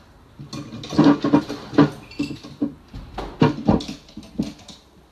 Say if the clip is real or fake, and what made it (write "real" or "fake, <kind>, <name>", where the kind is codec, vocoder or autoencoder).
real